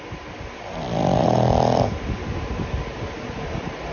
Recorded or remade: recorded